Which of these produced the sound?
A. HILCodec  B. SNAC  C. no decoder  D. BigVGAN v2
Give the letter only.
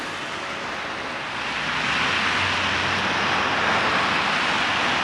C